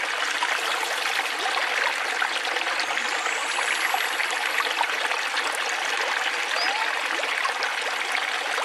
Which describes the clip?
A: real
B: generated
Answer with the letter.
A